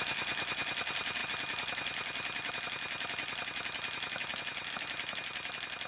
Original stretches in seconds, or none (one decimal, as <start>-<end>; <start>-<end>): 0.0-5.9